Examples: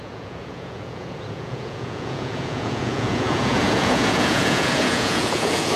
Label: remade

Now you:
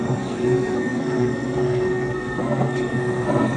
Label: remade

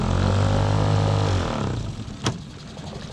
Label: recorded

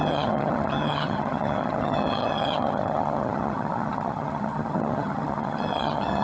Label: remade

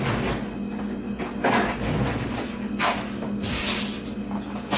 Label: recorded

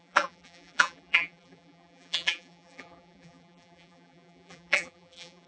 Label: remade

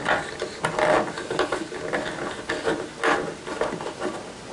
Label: recorded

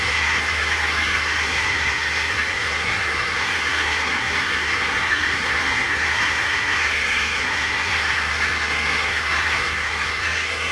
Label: remade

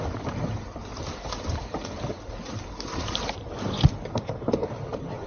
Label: remade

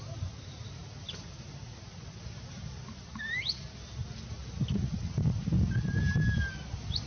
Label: recorded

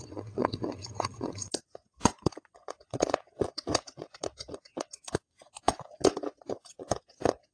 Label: remade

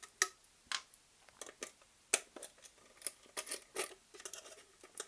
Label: recorded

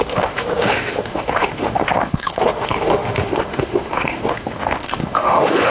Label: remade